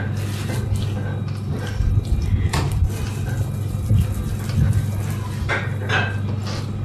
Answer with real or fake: real